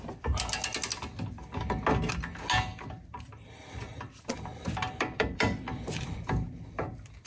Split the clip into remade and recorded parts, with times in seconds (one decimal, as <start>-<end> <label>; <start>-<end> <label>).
0.0-2.7 recorded; 2.7-7.3 remade